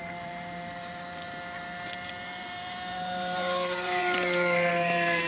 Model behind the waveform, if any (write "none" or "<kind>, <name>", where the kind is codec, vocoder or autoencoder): vocoder, BigVGAN v2